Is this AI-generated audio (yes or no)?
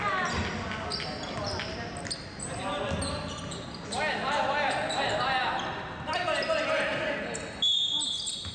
no